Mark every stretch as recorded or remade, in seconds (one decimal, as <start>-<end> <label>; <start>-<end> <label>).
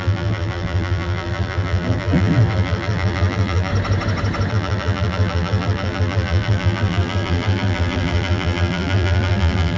0.0-3.7 remade; 3.7-4.5 recorded; 4.5-9.8 remade